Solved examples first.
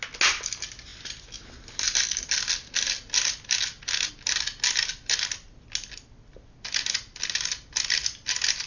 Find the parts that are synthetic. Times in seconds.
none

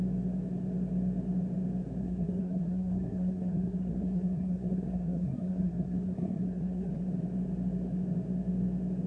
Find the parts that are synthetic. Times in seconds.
2.0-6.9 (codec, SNAC)

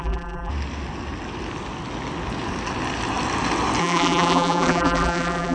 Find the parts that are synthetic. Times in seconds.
0.0-0.5 (vocoder, BigVGAN v2); 3.8-5.5

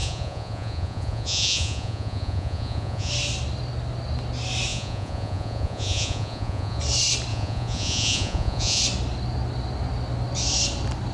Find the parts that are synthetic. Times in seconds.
0.0-3.1 (vocoder, Vocos); 4.7-6.8; 7.3-8.8

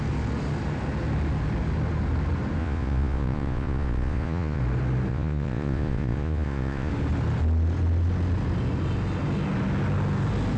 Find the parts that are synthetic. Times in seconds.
2.6-4.6 (vocoder, Vocos); 5.1-6.9

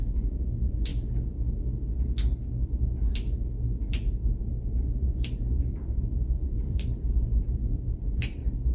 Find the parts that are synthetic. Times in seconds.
0.0-0.9 (vocoder, BigVGAN v2); 3.9-8.7

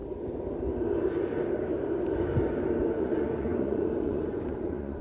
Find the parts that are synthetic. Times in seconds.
3.0-5.0 (vocoder, Vocos)

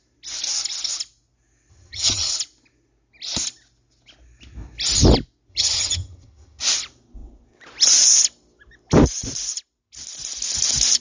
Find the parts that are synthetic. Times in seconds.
1.7-2.3 (vocoder, HiFi-GAN); 5.5-6.6